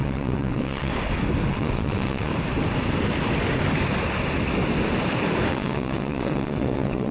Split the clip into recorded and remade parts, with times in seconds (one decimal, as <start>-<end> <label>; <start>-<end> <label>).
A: 0.0-0.9 remade; 0.9-1.5 recorded; 1.5-2.3 remade; 2.3-5.5 recorded; 5.5-7.1 remade